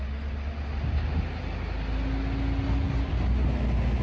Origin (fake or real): real